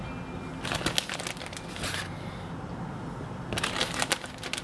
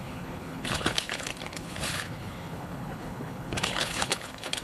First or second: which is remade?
second